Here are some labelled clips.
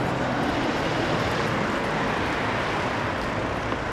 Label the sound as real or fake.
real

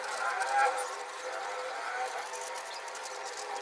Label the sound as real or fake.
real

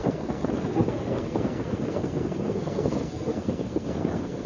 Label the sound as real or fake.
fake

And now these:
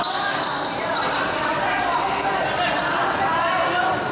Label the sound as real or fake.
fake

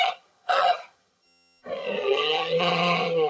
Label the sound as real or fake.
fake